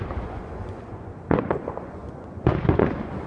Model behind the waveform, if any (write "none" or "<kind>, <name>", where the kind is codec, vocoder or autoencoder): vocoder, Vocos